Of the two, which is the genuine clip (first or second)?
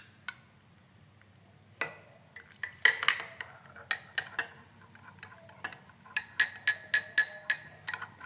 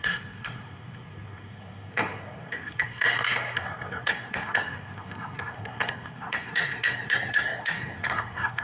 first